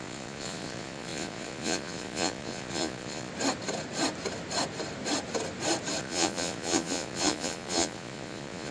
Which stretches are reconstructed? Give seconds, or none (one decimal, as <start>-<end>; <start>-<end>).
0.0-3.3; 6.0-8.7